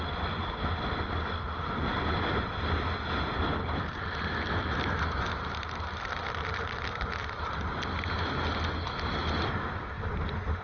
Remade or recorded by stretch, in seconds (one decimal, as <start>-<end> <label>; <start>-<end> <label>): 0.0-10.6 recorded